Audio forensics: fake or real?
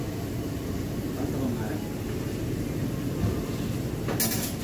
real